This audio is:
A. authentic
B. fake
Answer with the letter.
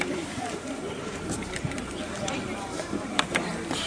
B